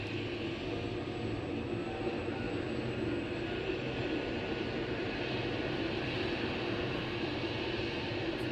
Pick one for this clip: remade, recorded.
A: recorded